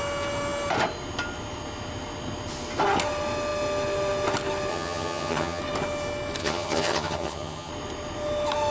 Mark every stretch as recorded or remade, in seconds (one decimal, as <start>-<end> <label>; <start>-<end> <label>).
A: 0.0-4.7 recorded; 4.7-5.6 remade; 5.6-6.4 recorded; 6.4-7.7 remade; 7.7-8.7 recorded